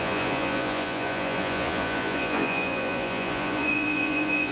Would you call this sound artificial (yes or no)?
yes